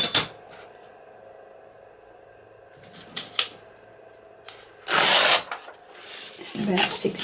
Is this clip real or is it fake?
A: real